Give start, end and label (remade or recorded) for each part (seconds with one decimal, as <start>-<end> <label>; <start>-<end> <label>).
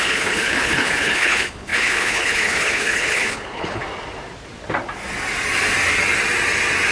0.0-3.8 remade; 3.8-6.9 recorded